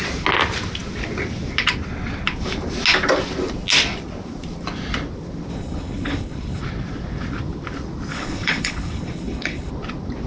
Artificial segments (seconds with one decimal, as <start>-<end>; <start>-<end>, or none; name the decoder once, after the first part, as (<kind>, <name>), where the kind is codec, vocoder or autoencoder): 5.5-6.6 (codec, HILCodec); 8.1-9.7